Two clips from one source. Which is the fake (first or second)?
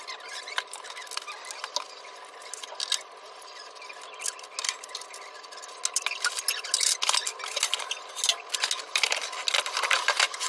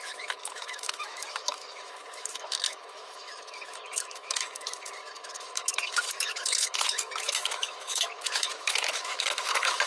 second